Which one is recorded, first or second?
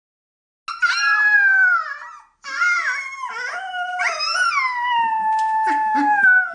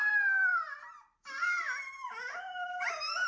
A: first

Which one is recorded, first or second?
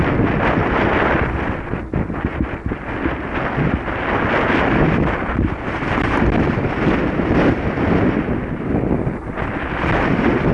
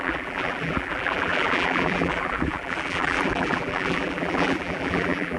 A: first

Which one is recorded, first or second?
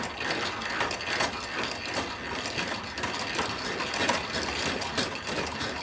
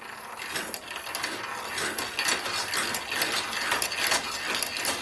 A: second